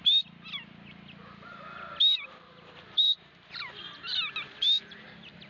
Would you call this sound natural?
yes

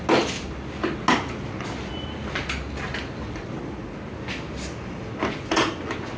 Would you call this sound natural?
yes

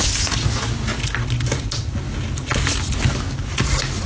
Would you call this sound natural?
yes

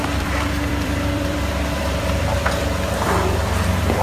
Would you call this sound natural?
no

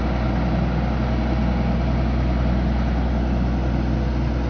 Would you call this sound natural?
yes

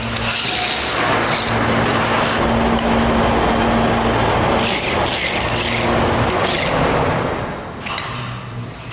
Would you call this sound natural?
yes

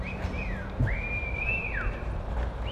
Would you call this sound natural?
no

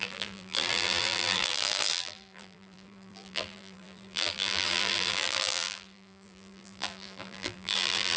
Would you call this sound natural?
no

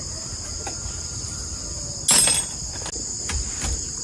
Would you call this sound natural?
yes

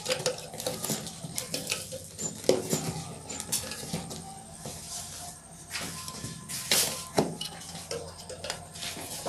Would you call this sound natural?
yes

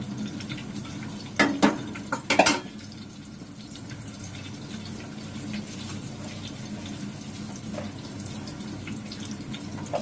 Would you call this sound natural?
yes